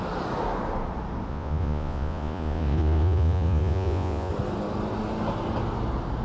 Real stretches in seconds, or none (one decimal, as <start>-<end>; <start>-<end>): 0.0-1.3; 4.3-6.2